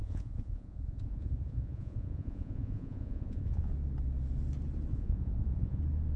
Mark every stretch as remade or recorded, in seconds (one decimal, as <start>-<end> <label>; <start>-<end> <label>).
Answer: 0.0-3.7 remade; 3.7-4.9 recorded; 4.9-5.8 remade; 5.8-6.2 recorded

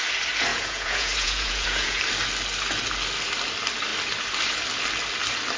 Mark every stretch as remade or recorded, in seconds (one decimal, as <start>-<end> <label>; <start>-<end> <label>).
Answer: 0.0-0.5 recorded; 0.5-2.0 remade; 2.0-5.6 recorded

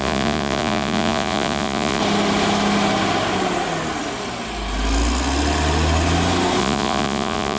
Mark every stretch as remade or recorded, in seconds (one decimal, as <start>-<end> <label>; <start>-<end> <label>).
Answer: 0.0-2.0 remade; 2.0-6.6 recorded; 6.6-7.6 remade

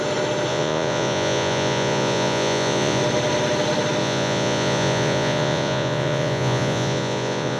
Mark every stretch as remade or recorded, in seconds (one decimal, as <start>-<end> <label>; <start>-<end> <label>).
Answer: 0.0-0.5 recorded; 0.5-3.0 remade; 3.0-4.0 recorded; 4.0-7.6 remade

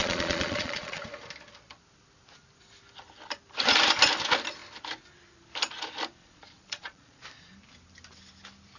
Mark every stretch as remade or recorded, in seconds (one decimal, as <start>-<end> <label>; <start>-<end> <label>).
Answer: 0.0-1.0 remade; 1.0-6.2 recorded; 6.2-7.2 remade; 7.2-8.8 recorded

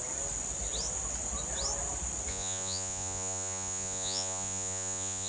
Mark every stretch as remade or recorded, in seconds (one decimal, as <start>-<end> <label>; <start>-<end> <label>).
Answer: 0.0-2.3 recorded; 2.3-5.3 remade

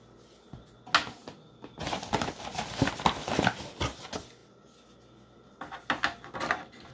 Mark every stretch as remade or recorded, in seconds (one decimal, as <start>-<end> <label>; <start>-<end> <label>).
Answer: 0.0-6.9 recorded